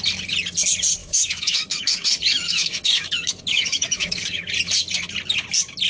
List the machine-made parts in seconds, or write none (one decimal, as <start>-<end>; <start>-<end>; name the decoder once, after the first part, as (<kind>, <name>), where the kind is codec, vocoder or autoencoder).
1.0-4.5 (autoencoder, DAC-VAE)